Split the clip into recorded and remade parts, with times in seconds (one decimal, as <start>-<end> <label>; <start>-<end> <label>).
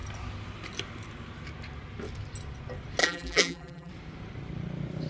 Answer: 0.0-3.0 recorded; 3.0-3.9 remade; 3.9-5.1 recorded